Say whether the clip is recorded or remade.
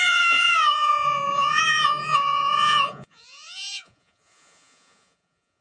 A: remade